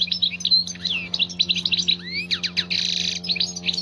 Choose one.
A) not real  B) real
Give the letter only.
B